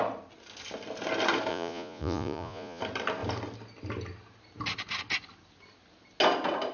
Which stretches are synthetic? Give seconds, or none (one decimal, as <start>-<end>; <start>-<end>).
1.5-2.8